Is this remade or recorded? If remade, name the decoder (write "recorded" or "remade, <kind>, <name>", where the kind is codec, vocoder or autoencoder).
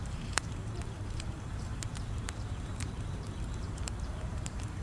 remade, vocoder, BigVGAN v2